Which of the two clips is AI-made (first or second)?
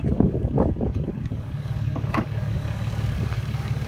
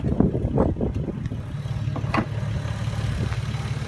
first